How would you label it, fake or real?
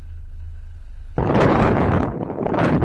fake